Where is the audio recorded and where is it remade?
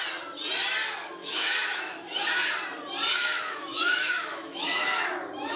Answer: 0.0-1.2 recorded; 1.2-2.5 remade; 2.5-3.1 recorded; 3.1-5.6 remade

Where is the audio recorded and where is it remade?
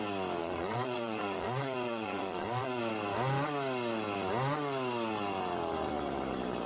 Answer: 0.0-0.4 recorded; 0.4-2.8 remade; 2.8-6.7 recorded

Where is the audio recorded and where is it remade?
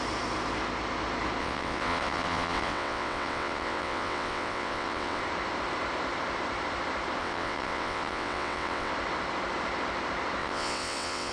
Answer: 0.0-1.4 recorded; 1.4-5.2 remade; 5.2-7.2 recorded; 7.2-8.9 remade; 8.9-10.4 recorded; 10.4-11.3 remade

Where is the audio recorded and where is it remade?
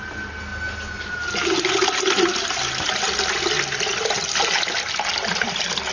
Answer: 0.0-5.9 recorded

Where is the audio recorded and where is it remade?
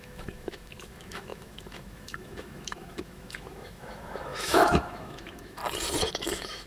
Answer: 0.0-5.6 remade; 5.6-6.1 recorded; 6.1-6.7 remade